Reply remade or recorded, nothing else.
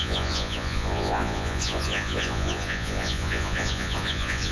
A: remade